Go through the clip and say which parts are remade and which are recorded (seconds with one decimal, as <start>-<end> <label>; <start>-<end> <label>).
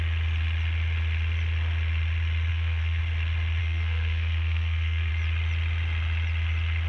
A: 0.0-2.5 recorded; 2.5-3.0 remade; 3.0-3.6 recorded; 3.6-5.1 remade; 5.1-6.9 recorded